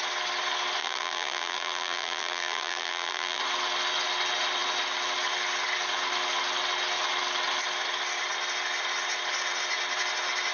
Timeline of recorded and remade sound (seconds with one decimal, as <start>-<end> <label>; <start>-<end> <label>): 0.0-0.8 recorded; 0.8-3.4 remade; 3.4-10.5 recorded

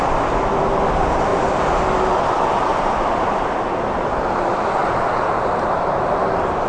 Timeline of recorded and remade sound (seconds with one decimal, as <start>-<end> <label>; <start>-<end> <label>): 0.0-2.7 recorded; 2.7-3.5 remade; 3.5-4.8 recorded; 4.8-6.0 remade; 6.0-6.7 recorded

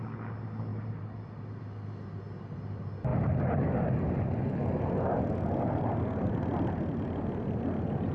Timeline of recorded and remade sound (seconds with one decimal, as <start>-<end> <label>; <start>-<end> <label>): 0.0-0.7 recorded; 0.7-1.6 remade; 1.6-8.1 recorded

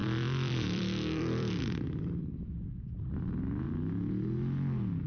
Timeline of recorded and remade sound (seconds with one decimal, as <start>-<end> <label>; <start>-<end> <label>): 0.0-3.1 remade; 3.1-5.1 recorded